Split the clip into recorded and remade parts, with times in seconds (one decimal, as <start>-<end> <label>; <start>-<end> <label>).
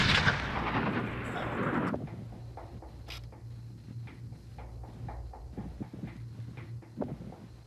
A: 0.0-7.7 recorded